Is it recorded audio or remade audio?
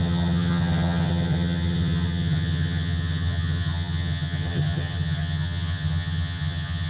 remade